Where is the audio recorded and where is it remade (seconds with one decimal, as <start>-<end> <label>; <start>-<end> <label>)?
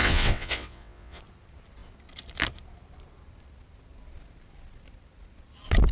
0.0-1.2 remade; 1.2-5.9 recorded